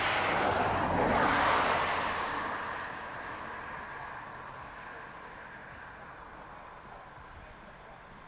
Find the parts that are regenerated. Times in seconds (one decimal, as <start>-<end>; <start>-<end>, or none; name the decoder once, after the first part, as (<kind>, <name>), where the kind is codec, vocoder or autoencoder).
5.6-7.2 (vocoder, BigVGAN v2)